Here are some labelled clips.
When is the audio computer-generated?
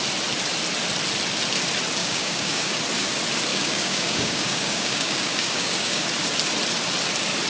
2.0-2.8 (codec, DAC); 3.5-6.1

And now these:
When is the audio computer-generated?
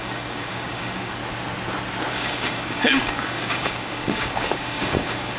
0.0-1.2 (codec, DAC); 2.1-5.4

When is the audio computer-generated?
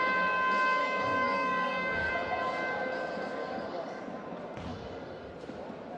0.8-2.1 (codec, DAC); 3.4-4.0; 4.7-5.3